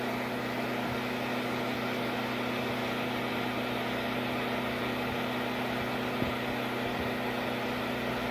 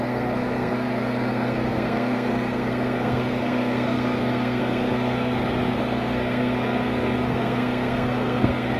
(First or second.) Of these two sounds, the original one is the first